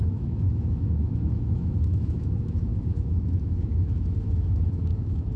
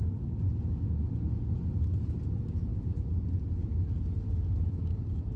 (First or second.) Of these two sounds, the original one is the second